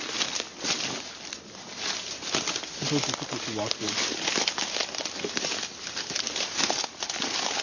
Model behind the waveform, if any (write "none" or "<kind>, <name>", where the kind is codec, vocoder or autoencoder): none